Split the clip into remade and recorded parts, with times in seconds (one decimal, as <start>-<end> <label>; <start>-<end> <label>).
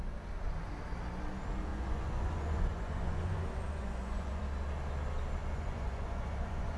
0.0-1.7 recorded; 1.7-4.4 remade; 4.4-5.4 recorded; 5.4-6.8 remade